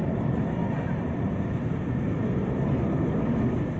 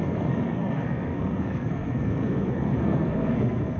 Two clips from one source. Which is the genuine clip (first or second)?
first